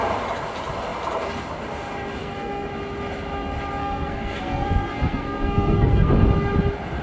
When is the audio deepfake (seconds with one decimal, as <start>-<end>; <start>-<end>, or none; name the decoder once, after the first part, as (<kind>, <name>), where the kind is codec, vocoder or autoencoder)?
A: 2.2-2.7 (codec, SNAC); 3.8-6.1